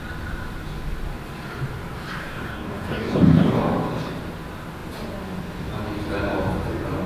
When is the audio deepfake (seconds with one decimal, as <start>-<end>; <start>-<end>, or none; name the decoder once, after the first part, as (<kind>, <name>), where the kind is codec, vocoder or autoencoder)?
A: 2.2-3.6 (codec, DAC)